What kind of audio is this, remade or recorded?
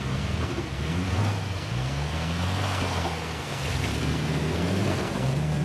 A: remade